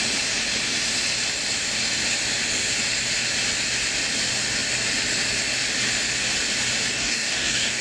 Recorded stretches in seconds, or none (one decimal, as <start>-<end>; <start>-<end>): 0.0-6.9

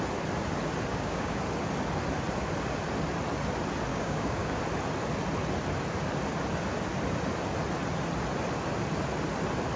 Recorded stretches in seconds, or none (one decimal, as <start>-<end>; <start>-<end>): 0.0-0.9; 1.4-3.9; 4.6-9.8

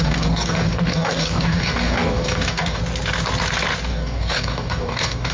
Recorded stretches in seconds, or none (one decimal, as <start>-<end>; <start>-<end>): 2.8-3.9

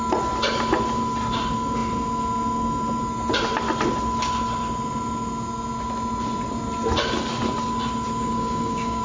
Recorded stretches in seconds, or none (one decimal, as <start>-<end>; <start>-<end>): 0.0-8.2

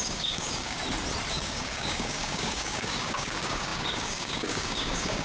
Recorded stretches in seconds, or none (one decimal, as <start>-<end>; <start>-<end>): 0.8-1.3